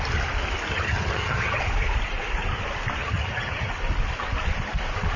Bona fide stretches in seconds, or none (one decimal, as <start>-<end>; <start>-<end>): 0.0-0.7; 1.6-3.0; 3.7-5.2